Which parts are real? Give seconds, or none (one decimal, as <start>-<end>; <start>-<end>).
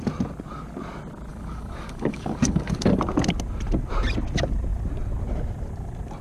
0.0-1.3; 3.0-6.2